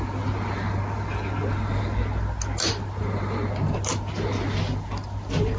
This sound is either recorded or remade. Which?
recorded